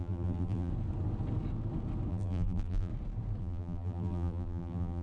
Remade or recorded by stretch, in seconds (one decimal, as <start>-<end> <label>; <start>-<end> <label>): 0.0-0.7 remade; 0.7-2.1 recorded; 2.1-2.9 remade; 2.9-3.4 recorded; 3.4-5.0 remade